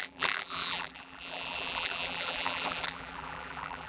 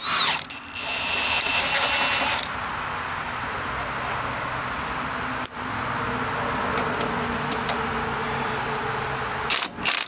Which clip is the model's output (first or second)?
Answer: first